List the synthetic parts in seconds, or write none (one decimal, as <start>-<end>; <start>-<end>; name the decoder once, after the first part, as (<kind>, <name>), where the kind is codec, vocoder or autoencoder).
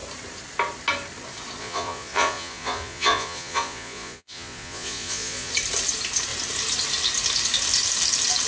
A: 1.6-5.5 (vocoder, Vocos)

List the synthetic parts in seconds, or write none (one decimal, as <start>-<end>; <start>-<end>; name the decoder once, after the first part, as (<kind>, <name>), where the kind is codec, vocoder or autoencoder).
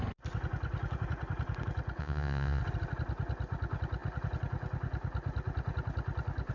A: 2.0-2.6 (vocoder, Vocos)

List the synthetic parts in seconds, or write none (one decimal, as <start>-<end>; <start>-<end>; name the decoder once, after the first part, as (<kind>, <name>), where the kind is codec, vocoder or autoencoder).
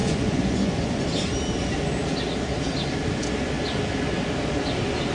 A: 0.0-1.0 (vocoder, Vocos)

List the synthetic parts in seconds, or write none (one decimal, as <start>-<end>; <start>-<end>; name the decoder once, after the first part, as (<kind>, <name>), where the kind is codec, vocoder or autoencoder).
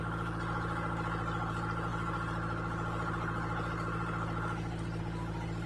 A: none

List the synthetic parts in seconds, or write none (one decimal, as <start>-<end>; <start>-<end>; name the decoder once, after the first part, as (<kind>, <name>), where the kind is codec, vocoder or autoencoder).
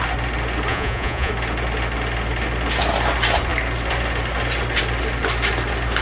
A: 0.7-1.3 (vocoder, Vocos)